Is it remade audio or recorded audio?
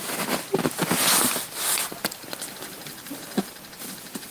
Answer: remade